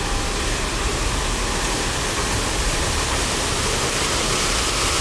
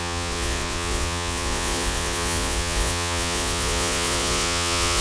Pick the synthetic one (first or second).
second